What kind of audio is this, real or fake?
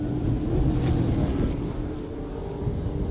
real